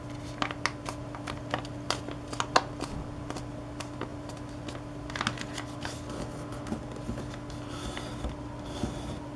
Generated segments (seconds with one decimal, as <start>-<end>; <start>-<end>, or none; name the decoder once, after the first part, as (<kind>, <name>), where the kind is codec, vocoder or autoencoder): none